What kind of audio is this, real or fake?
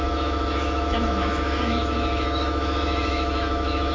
fake